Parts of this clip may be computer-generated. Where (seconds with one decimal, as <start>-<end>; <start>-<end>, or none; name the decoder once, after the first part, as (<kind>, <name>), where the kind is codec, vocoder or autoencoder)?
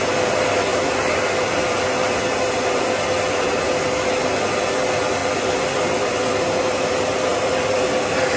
5.2-6.0 (vocoder, BigVGAN v2); 7.3-8.0